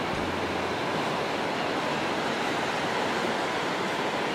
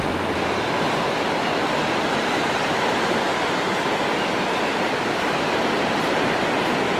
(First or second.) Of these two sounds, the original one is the first